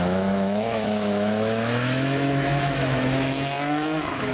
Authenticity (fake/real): fake